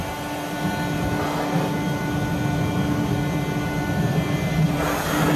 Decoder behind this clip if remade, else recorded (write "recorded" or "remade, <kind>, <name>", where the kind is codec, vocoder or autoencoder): recorded